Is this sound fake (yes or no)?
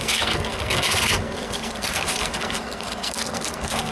yes